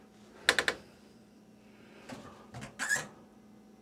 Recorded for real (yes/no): yes